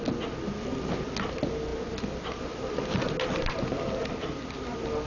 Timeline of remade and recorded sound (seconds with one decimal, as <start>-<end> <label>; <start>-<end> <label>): 0.0-5.1 recorded